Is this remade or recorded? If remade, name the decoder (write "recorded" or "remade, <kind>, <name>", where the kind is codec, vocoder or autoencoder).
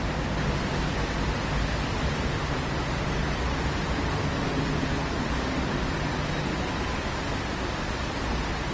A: recorded